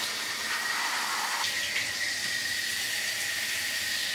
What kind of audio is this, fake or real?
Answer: real